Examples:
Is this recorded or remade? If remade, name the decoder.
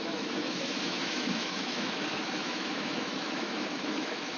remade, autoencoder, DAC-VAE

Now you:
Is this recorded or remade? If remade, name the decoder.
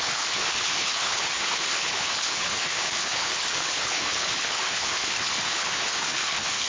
remade, codec, HILCodec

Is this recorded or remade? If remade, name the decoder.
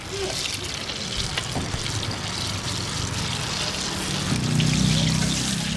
recorded